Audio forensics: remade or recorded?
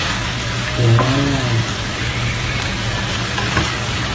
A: remade